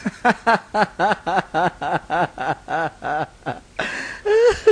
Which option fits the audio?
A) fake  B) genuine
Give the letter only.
B